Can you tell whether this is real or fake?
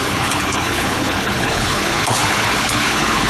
fake